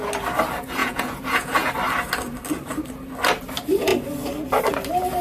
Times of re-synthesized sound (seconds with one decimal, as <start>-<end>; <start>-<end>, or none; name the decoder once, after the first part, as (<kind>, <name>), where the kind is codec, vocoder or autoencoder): 0.8-1.7 (vocoder, Vocos)